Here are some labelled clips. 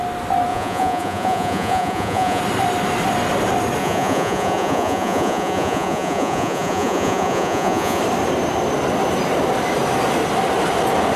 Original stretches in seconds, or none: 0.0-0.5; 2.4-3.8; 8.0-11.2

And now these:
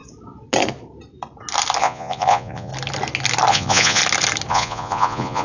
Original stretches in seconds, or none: 0.0-1.8; 2.7-3.5; 4.0-4.5